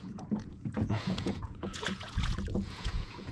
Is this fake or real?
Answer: fake